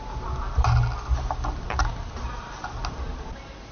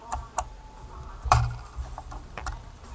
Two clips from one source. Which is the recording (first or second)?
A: first